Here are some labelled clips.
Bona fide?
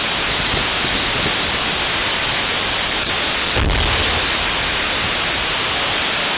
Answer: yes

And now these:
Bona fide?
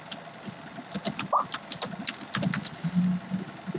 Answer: yes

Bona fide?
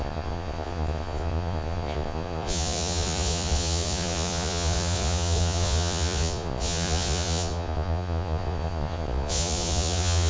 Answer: no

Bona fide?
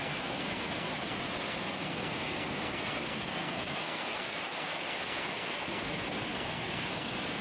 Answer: no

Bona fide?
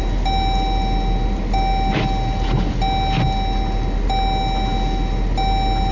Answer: yes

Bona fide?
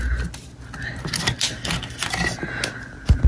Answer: yes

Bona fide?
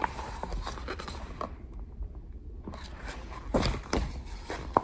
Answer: yes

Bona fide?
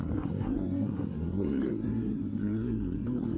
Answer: no